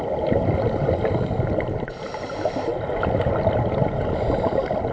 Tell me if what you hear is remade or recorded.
recorded